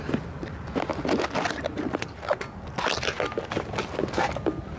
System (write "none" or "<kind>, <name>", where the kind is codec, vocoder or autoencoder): none